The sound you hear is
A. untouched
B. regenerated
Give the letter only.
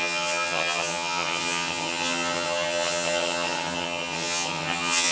B